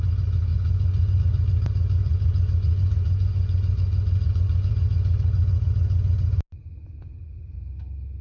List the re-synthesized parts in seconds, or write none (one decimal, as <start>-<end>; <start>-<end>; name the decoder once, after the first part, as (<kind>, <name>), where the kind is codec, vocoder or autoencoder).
0.5-1.2 (vocoder, Vocos); 2.0-4.7

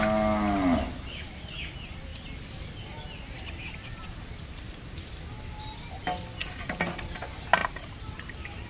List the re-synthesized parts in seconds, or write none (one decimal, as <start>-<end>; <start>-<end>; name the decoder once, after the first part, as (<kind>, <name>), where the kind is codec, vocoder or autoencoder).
none

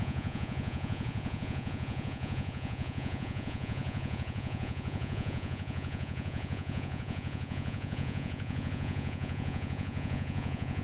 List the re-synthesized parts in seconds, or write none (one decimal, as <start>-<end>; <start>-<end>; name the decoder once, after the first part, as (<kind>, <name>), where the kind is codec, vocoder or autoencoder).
0.0-10.8 (vocoder, Vocos)

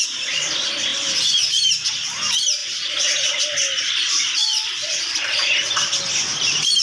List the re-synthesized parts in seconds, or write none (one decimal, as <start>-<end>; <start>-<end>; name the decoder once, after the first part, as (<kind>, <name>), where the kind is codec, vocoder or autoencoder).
none

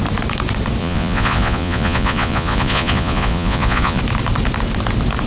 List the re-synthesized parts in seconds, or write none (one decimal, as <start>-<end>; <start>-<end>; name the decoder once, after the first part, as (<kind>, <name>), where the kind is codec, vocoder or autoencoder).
0.8-4.0 (vocoder, Vocos)

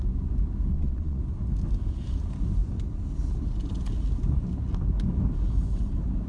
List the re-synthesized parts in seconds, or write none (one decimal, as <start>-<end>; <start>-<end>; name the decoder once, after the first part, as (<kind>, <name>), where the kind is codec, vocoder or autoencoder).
0.7-1.2 (vocoder, Vocos)